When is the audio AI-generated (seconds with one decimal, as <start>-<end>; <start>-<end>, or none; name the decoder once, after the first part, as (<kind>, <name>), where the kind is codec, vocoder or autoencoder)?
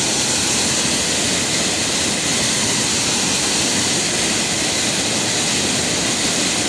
none